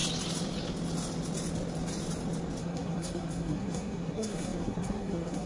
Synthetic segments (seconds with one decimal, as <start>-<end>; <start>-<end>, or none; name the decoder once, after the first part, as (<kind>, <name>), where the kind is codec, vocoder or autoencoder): 2.6-5.5 (codec, SNAC)